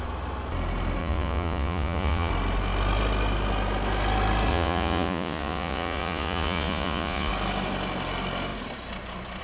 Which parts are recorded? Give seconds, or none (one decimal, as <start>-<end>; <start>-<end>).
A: 0.0-1.0; 2.3-4.5; 7.3-9.4